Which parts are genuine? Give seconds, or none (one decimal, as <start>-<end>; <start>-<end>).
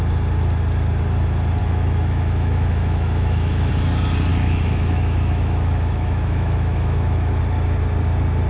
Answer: 0.0-1.6; 3.7-4.3; 7.4-8.5